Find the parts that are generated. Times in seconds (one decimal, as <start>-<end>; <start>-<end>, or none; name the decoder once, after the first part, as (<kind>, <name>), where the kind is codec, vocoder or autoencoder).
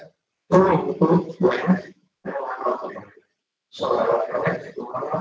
0.4-2.9 (autoencoder, DAC-VAE); 3.4-4.4